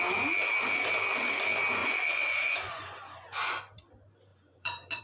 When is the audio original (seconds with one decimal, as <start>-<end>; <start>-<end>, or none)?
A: 0.0-1.8; 3.6-4.3